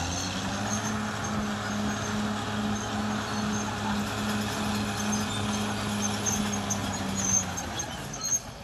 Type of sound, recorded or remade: recorded